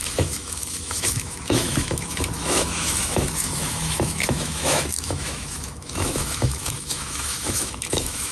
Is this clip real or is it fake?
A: fake